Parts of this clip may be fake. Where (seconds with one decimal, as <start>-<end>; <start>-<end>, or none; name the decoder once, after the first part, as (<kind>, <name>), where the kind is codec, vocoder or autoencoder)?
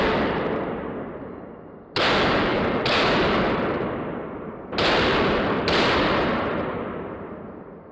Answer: 2.5-6.1 (vocoder, BigVGAN v2)